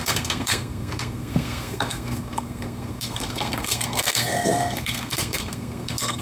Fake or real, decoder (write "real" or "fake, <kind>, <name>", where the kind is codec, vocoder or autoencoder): fake, codec, SNAC